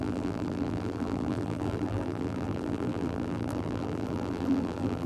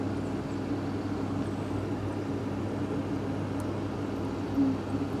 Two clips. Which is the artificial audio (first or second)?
first